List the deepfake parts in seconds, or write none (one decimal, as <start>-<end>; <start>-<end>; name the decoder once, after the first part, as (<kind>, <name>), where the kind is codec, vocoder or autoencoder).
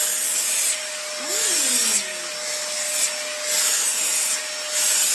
none